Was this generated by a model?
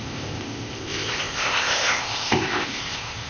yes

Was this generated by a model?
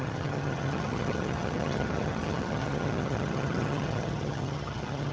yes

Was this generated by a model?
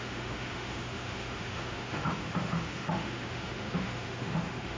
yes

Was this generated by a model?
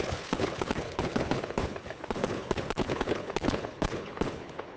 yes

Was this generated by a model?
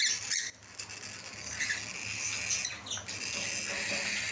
no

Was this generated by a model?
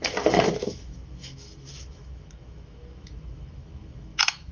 yes